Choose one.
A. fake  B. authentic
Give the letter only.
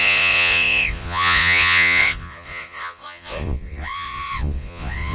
A